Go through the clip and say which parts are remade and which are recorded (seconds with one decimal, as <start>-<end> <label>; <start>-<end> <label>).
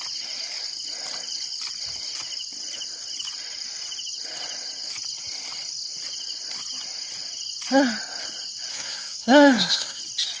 0.0-8.7 recorded; 8.7-10.0 remade; 10.0-10.4 recorded